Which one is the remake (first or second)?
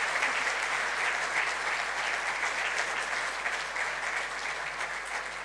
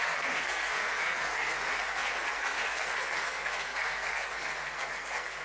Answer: second